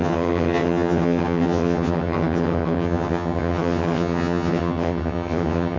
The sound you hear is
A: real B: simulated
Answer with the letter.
B